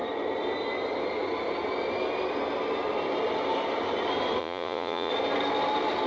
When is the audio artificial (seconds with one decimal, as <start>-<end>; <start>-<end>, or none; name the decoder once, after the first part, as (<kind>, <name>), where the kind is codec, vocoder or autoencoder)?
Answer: 4.4-5.1 (vocoder, Vocos)